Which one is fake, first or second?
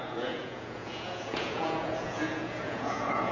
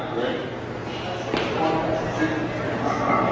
first